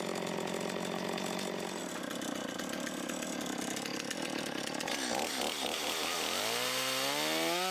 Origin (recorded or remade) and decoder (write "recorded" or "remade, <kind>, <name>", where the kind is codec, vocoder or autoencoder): recorded